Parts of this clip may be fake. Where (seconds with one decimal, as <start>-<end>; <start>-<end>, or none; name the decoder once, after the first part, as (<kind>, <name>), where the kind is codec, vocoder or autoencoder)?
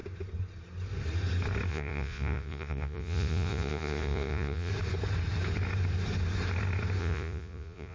1.7-4.7 (vocoder, Vocos); 7.0-7.9